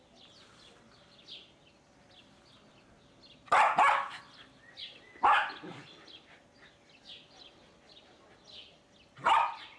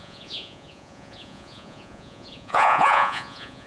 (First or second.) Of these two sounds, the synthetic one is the second